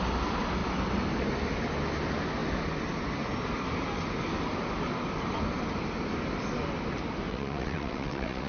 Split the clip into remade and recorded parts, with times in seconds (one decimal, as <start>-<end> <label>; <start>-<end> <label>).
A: 0.0-7.3 recorded; 7.3-8.5 remade